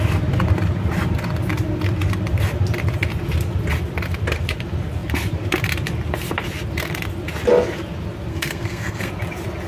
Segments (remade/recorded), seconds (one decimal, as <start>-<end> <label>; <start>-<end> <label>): 0.0-8.3 recorded; 8.3-9.1 remade; 9.1-9.7 recorded